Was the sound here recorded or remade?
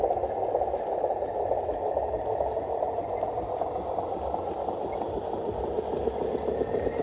recorded